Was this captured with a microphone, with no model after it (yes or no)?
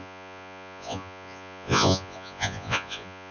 no